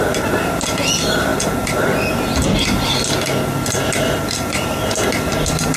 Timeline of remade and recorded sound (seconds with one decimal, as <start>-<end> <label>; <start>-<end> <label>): 0.0-2.4 remade; 2.4-4.1 recorded; 4.1-5.8 remade